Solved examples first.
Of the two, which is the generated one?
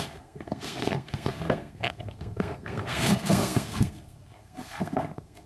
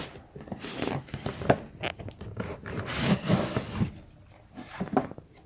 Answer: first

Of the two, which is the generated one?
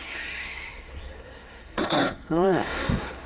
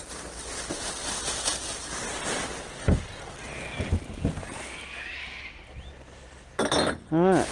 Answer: first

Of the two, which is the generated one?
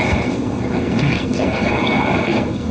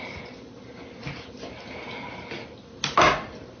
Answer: first